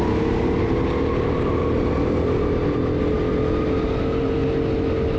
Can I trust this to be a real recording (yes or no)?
yes